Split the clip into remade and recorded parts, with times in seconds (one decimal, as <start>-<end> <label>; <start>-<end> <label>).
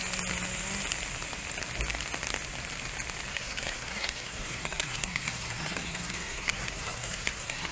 0.0-3.3 recorded; 3.3-7.7 remade